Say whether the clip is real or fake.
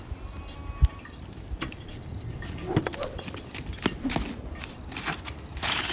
real